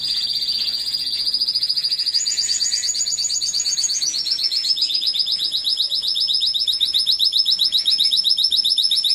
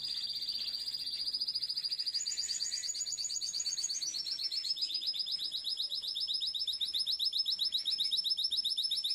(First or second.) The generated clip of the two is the first